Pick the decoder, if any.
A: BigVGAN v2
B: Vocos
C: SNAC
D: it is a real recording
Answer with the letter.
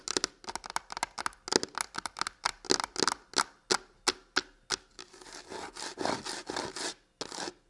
D